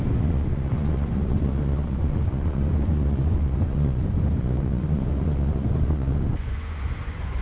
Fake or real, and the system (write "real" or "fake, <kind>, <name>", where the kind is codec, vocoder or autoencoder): fake, vocoder, Vocos